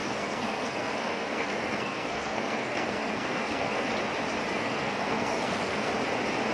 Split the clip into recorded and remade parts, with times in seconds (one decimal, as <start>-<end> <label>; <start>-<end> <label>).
0.0-3.9 remade; 3.9-4.5 recorded; 4.5-5.9 remade; 5.9-6.5 recorded